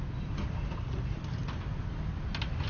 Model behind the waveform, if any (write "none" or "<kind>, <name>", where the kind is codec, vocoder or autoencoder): none